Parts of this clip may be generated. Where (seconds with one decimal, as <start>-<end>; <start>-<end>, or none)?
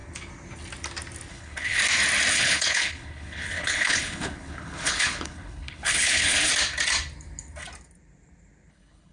1.3-1.8; 2.3-6.5; 8.7-9.1